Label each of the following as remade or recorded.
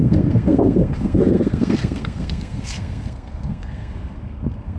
remade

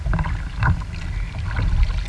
recorded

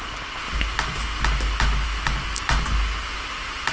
recorded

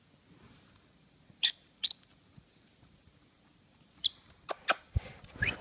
recorded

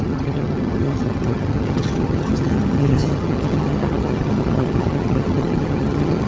remade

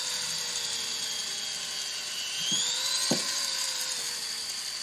recorded